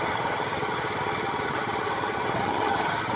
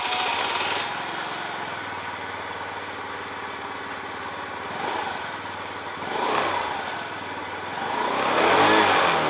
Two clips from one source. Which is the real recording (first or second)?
second